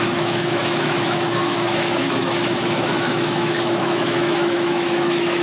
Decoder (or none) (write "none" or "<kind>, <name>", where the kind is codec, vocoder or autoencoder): autoencoder, DAC-VAE